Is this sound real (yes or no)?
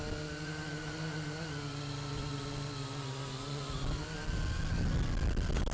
yes